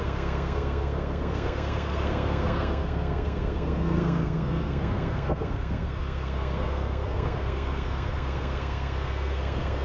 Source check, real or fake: fake